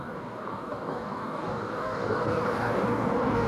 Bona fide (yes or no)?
no